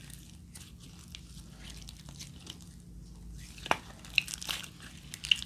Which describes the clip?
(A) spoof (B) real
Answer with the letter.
B